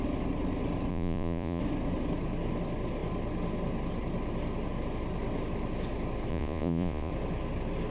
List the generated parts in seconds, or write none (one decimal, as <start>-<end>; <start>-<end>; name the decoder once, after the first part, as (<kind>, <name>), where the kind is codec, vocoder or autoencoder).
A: 0.9-1.6 (vocoder, Vocos); 6.3-7.1